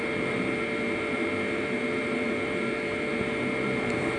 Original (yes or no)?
no